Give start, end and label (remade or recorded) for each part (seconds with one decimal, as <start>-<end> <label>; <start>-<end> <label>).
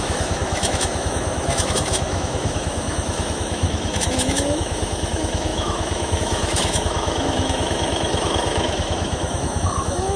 0.0-10.2 remade